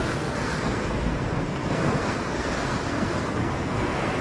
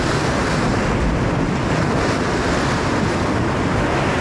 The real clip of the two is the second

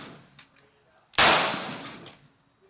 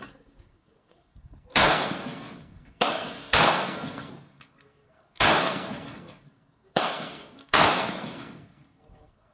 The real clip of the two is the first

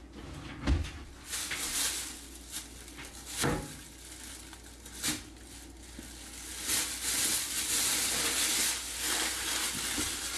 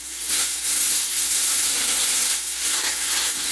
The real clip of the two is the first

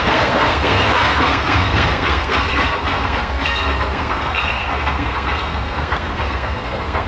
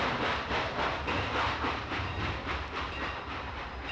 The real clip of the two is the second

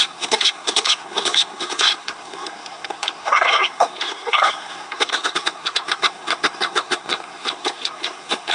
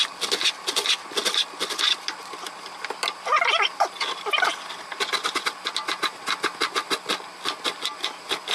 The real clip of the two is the second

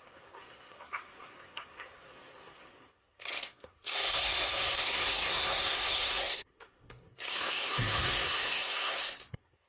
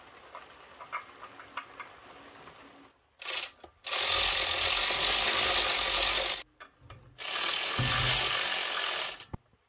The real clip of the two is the second